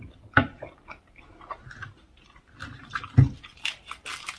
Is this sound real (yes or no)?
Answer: yes